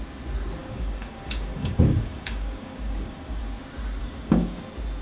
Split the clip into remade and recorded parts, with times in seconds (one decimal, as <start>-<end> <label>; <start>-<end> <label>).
0.0-0.6 recorded; 0.6-3.4 remade; 3.4-4.0 recorded; 4.0-4.6 remade; 4.6-5.0 recorded